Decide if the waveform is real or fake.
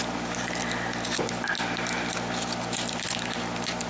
real